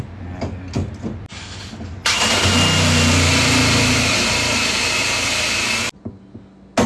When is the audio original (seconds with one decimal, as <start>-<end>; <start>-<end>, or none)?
0.0-6.9